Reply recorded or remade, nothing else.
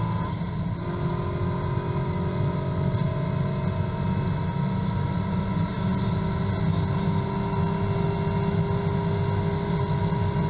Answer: recorded